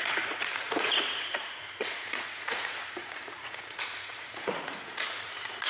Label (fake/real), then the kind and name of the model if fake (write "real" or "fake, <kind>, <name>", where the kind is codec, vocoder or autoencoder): fake, vocoder, Vocos